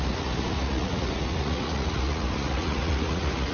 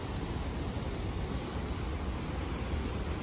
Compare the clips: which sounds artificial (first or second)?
first